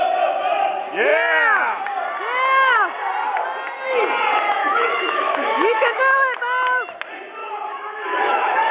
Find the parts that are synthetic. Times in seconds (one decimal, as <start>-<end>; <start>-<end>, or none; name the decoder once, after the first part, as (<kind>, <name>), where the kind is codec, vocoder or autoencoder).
4.6-6.0 (autoencoder, DAC-VAE); 7.4-8.7